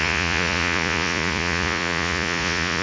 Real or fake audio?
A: fake